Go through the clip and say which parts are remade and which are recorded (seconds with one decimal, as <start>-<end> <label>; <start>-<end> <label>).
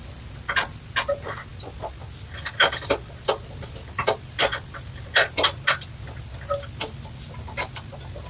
0.0-8.3 recorded